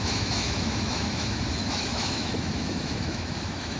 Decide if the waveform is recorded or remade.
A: remade